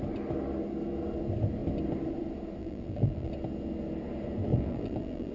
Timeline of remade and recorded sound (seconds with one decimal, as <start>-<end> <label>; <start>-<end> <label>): 0.0-2.6 recorded; 2.6-3.3 remade; 3.3-4.5 recorded; 4.5-5.3 remade